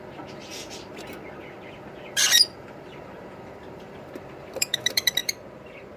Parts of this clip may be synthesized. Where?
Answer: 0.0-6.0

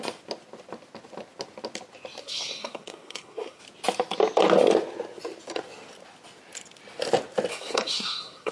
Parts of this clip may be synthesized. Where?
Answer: 2.2-3.6; 7.5-8.5

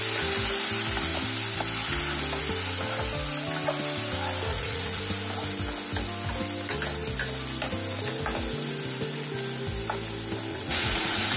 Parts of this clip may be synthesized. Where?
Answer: 4.5-5.0; 10.5-11.4

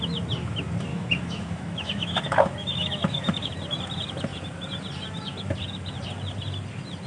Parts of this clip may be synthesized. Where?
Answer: 0.9-3.5

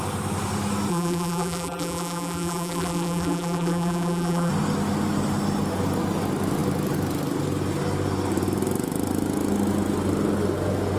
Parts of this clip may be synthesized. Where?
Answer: 0.9-4.5